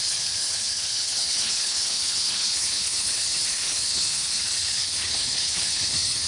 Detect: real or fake fake